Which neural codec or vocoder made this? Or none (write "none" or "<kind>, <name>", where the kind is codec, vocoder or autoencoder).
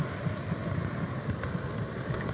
none